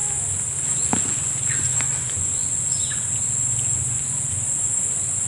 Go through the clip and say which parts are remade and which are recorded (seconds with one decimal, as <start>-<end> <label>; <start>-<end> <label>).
0.0-0.9 recorded; 0.9-5.3 remade